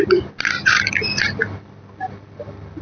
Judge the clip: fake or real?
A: real